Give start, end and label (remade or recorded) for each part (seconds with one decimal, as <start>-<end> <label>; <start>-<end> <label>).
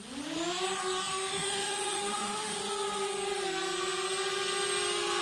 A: 0.0-1.1 recorded; 1.1-2.6 remade; 2.6-5.2 recorded